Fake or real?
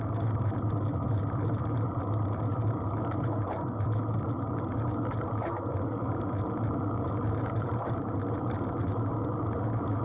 fake